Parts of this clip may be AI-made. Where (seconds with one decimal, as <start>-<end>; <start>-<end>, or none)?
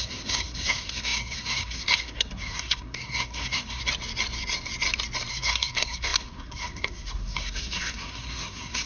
0.0-3.8; 5.3-8.9